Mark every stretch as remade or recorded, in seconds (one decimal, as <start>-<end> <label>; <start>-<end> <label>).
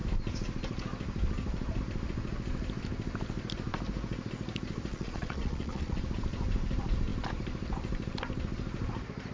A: 0.0-4.9 recorded; 4.9-6.0 remade; 6.0-9.3 recorded